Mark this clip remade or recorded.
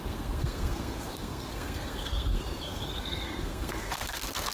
remade